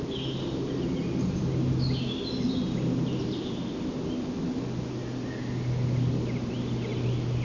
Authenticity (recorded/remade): recorded